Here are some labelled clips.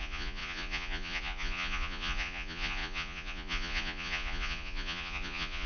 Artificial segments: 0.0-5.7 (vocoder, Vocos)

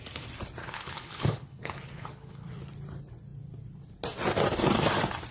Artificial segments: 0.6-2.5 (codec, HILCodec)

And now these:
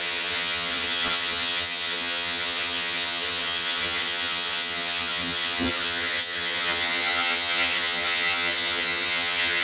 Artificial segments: 0.0-9.6 (vocoder, HiFi-GAN)

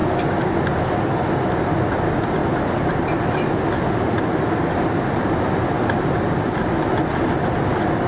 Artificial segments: none

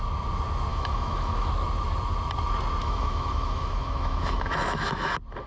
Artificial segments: 0.7-1.5 (autoencoder, DAC-VAE); 2.8-5.1

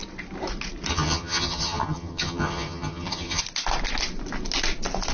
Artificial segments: 0.9-3.4 (vocoder, HiFi-GAN)